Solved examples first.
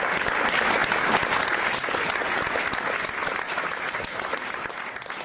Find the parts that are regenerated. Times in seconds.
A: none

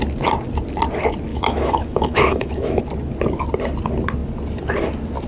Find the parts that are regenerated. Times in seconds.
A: 1.3-2.8 (autoencoder, DAC-VAE)

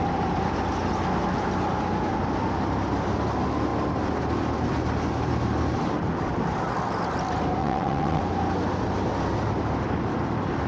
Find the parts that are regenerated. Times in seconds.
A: 7.6-8.2 (vocoder, WaveNeXt)